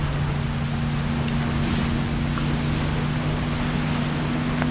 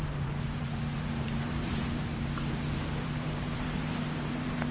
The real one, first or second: first